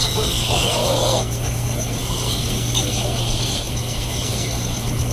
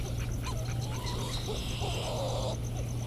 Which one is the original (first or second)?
second